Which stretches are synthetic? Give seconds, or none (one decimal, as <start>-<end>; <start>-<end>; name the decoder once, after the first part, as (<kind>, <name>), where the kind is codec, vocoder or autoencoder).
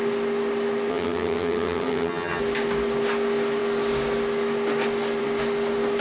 0.9-2.4 (vocoder, HiFi-GAN)